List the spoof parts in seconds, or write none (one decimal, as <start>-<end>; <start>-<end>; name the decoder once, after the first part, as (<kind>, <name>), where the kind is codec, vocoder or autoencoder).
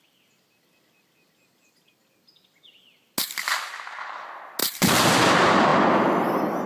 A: 4.6-5.2 (vocoder, BigVGAN v2)